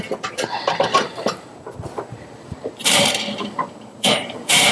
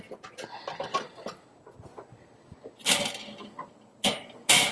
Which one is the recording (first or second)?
second